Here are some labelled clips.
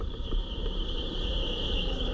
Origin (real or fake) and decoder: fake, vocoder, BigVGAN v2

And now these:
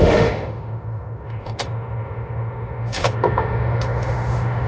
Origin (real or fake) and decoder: fake, autoencoder, DAC-VAE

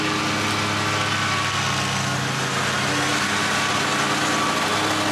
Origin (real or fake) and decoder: real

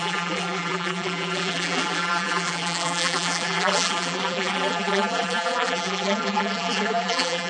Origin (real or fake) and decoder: fake, vocoder, BigVGAN v2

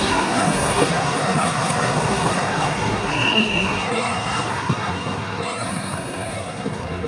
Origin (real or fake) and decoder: fake, codec, SNAC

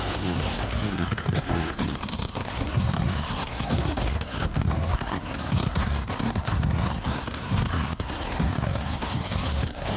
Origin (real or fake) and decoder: fake, codec, SNAC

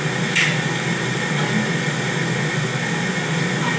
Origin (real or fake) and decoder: real